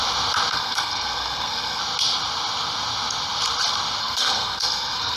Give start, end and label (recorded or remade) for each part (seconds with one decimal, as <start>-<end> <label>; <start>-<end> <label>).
0.0-0.5 recorded; 0.5-1.8 remade; 1.8-4.0 recorded; 4.0-5.2 remade